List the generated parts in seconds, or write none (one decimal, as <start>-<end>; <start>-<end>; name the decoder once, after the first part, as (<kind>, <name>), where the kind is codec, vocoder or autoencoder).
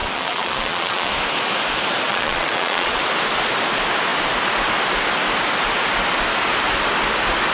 0.0-1.1 (vocoder, Vocos); 2.1-3.0